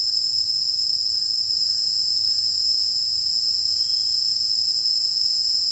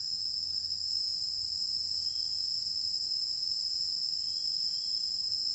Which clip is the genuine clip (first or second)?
second